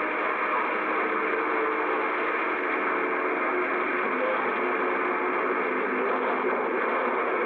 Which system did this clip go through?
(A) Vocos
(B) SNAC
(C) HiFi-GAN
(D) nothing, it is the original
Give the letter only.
D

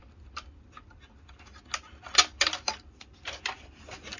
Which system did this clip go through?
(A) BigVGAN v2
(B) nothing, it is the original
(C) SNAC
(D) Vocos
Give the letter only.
B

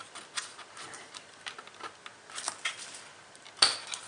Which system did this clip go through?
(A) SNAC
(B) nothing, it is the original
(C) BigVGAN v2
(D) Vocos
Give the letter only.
B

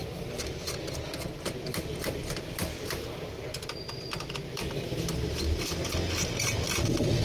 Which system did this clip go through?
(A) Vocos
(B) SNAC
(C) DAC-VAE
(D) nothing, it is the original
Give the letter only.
D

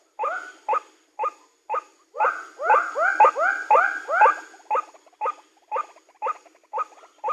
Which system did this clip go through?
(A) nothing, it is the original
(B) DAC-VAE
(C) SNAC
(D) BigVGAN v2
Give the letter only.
A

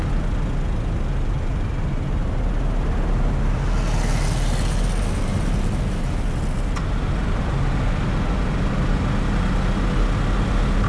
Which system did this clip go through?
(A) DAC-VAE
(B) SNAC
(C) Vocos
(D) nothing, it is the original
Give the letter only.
D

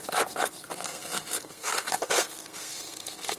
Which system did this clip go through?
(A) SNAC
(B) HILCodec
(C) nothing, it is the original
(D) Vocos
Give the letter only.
A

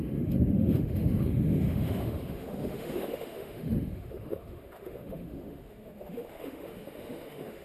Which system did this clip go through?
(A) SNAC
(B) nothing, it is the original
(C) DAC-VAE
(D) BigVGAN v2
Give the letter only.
C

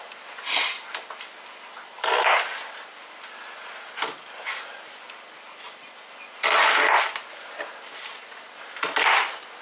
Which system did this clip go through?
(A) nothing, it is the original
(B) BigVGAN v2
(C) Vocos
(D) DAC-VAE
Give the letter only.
A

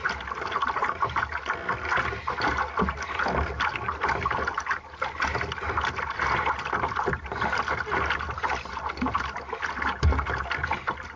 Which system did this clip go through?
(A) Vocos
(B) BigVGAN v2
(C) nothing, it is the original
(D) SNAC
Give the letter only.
C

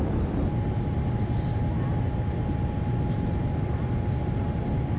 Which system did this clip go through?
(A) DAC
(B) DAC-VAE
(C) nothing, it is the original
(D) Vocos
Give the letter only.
C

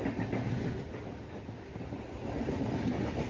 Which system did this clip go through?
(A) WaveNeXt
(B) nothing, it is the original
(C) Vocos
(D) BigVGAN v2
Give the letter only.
B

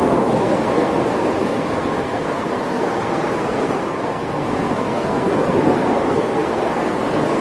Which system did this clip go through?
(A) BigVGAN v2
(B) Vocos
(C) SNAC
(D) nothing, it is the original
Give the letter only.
C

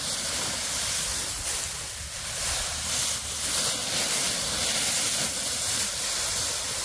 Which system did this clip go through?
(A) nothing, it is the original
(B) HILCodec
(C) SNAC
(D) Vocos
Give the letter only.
A